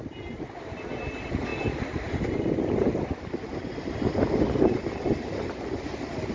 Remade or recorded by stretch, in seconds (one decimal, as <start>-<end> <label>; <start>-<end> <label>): 0.0-6.3 recorded